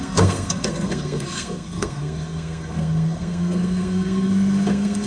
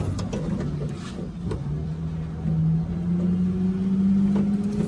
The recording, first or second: second